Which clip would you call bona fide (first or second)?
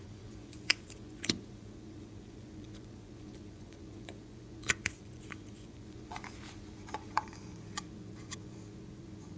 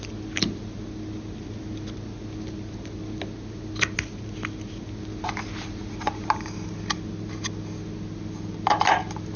second